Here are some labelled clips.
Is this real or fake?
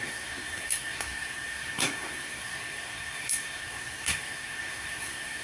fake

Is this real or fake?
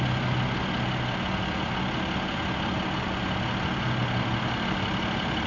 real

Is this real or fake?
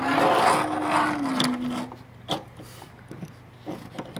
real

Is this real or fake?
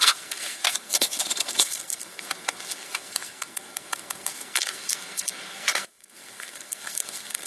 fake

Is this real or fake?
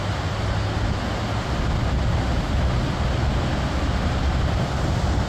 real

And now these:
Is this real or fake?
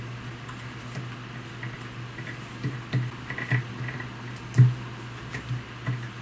real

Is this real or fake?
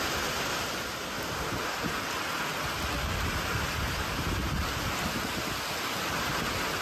real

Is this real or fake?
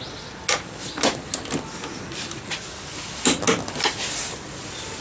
real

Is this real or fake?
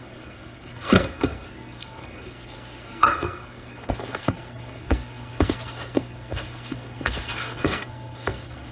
fake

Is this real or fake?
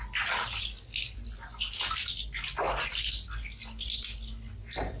real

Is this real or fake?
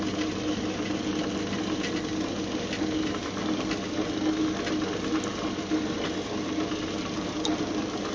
real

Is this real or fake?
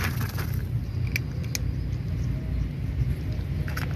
real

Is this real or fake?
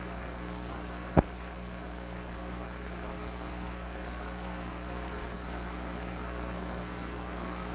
fake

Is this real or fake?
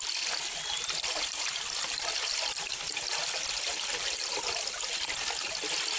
real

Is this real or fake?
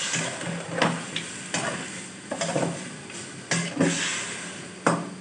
real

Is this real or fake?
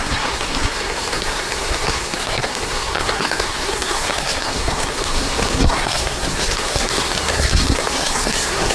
fake